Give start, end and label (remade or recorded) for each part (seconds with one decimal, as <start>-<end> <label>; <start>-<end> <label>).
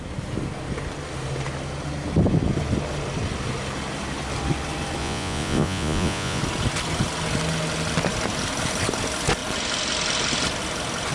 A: 0.0-5.0 recorded; 5.0-6.4 remade; 6.4-11.1 recorded